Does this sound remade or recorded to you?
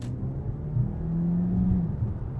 recorded